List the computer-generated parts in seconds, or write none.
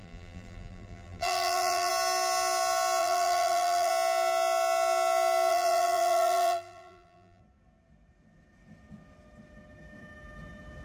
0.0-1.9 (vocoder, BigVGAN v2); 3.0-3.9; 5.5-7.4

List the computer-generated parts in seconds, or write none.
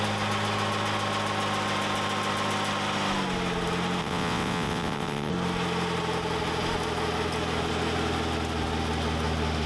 4.0-5.3 (vocoder, WaveNeXt)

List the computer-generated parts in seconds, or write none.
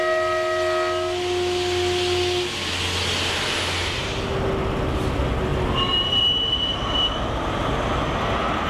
none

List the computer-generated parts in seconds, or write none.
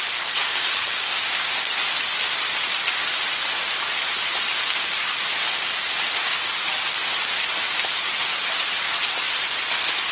0.4-1.7 (codec, DAC)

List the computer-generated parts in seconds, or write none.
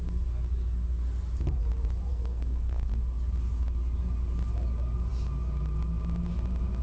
2.1-2.9 (codec, SNAC)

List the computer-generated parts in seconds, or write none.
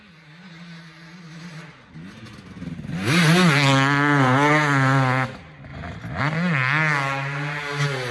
none